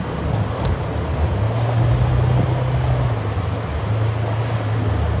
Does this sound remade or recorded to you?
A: recorded